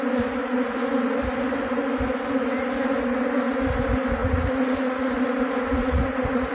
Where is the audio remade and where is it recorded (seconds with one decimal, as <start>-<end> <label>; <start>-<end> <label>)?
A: 0.0-4.2 recorded; 4.2-5.1 remade; 5.1-5.8 recorded; 5.8-6.5 remade